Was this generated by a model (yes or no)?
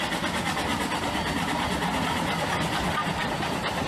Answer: no